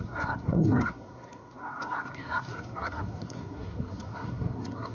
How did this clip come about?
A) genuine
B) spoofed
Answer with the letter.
B